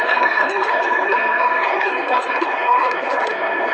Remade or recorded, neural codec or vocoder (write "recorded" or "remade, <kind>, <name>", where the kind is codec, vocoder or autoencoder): remade, codec, SNAC